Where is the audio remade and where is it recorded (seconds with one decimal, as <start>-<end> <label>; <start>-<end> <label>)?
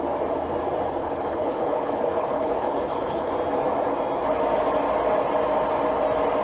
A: 0.0-1.0 recorded; 1.0-3.3 remade; 3.3-6.4 recorded